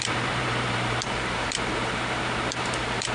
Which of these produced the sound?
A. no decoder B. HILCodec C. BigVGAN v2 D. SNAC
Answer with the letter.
C